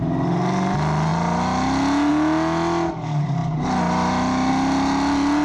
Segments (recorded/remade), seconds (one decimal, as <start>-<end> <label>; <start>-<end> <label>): 0.0-5.4 recorded